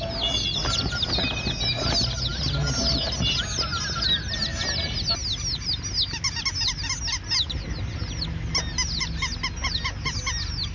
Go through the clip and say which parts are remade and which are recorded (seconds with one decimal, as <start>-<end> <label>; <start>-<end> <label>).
0.0-10.7 recorded